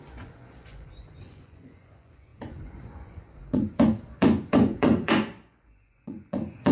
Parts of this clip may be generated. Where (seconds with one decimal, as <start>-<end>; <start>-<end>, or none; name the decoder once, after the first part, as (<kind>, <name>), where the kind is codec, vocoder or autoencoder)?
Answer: 0.0-6.7 (vocoder, Vocos)